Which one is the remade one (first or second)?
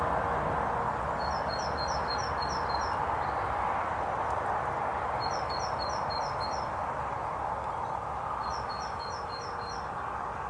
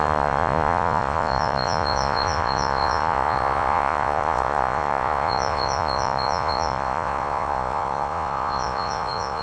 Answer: second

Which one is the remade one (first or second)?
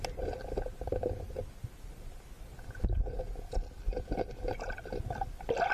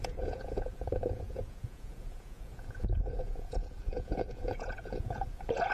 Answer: second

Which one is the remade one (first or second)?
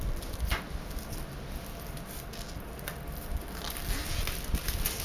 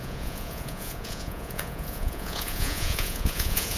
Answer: second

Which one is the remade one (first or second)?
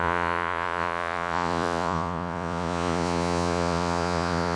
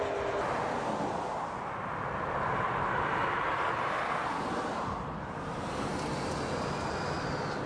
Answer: first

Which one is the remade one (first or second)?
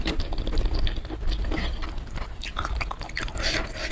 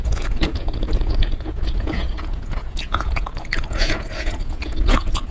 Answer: second